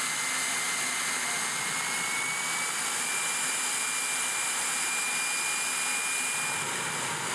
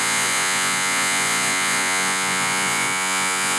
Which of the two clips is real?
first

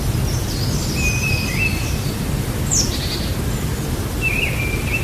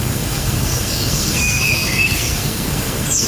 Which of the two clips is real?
first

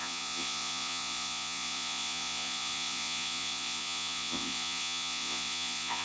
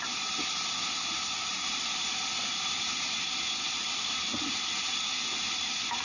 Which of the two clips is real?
second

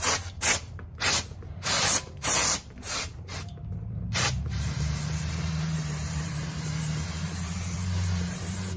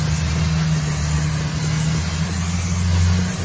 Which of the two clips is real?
second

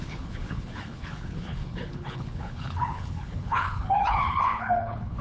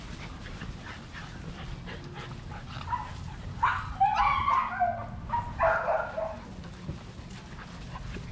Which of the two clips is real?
second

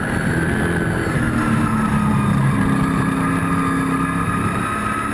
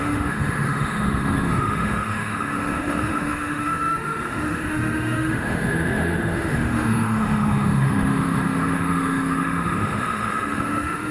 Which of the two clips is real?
first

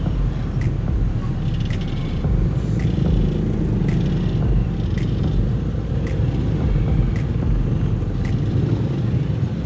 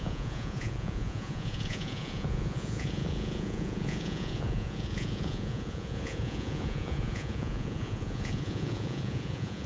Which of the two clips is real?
first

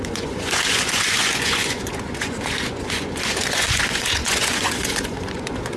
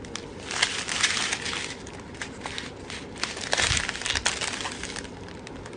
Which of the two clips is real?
second